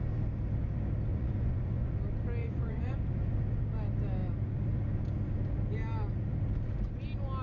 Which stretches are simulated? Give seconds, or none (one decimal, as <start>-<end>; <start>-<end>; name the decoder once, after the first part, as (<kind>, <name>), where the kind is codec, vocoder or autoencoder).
1.1-1.9 (vocoder, Vocos); 2.4-3.0